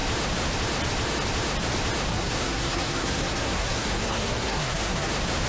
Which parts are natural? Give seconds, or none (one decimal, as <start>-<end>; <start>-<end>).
0.0-2.1; 5.1-5.5